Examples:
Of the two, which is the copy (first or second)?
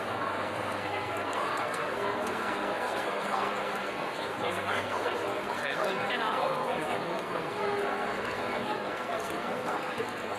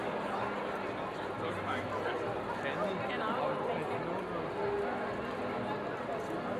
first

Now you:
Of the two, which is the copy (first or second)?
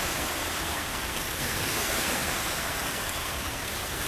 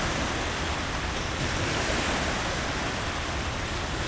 first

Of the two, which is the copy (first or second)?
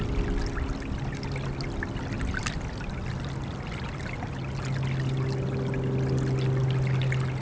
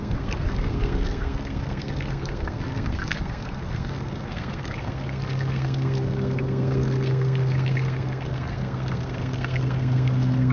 second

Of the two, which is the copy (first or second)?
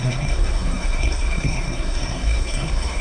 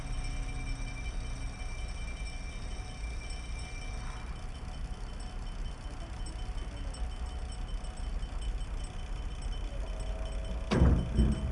first